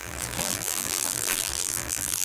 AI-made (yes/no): yes